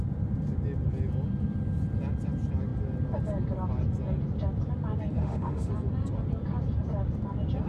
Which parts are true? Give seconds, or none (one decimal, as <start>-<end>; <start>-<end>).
0.0-5.2; 5.7-7.7